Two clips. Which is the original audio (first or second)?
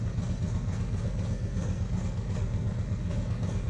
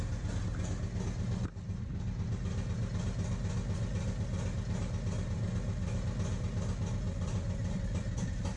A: second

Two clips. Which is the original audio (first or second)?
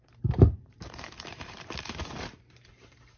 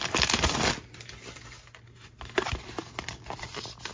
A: second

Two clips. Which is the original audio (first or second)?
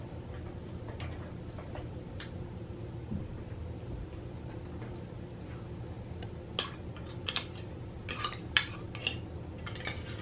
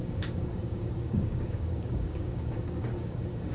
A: first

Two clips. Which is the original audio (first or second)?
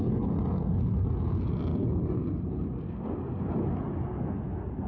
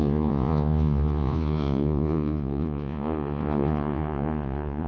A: first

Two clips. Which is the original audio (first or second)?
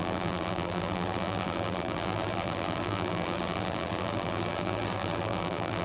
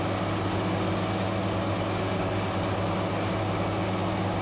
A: second